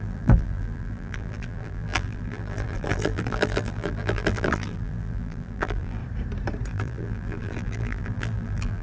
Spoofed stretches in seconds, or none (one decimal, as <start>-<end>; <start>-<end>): 0.0-6.0; 6.7-8.8